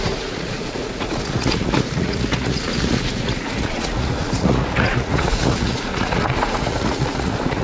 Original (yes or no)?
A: no